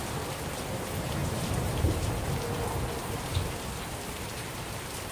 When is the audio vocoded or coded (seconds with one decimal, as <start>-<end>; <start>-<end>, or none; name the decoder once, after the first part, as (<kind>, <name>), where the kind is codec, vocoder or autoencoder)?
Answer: 1.2-1.9 (vocoder, BigVGAN v2)